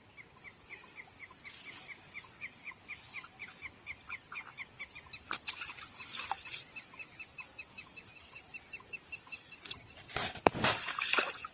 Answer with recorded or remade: recorded